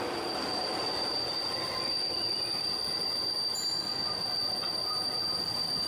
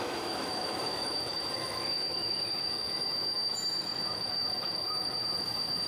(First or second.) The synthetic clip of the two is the second